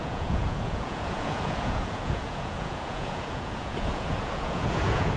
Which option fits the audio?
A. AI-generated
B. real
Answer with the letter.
A